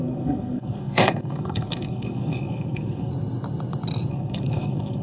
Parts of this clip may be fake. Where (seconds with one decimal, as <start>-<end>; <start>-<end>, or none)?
0.0-3.1; 4.1-5.0